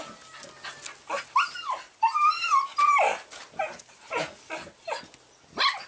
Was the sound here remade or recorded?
recorded